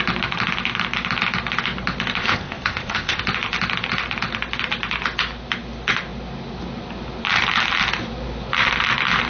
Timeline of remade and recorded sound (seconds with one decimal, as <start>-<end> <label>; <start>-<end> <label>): 0.0-2.2 recorded; 2.2-3.2 remade; 3.2-9.3 recorded